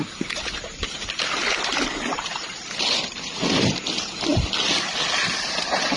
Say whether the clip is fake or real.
real